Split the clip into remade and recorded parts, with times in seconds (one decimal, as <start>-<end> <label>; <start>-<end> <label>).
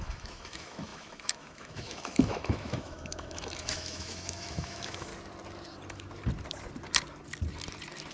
0.0-5.1 remade; 5.1-8.1 recorded